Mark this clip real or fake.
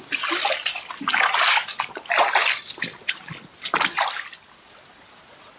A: real